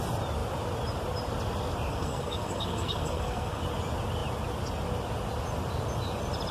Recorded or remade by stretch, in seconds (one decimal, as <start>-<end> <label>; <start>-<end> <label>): 0.0-1.9 recorded; 1.9-3.6 remade; 3.6-6.5 recorded